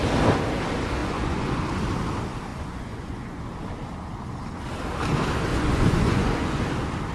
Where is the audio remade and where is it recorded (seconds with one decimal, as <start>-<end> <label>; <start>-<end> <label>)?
0.0-1.0 recorded; 1.0-1.6 remade; 1.6-2.5 recorded; 2.5-3.4 remade; 3.4-5.5 recorded; 5.5-6.6 remade; 6.6-7.1 recorded